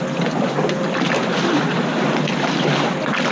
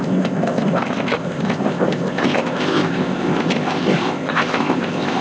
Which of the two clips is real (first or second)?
first